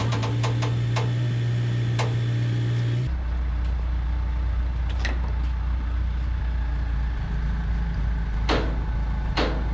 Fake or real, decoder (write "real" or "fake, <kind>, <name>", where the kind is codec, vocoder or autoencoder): real